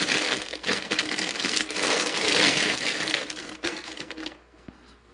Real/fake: fake